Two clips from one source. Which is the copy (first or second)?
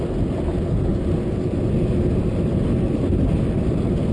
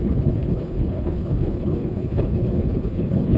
second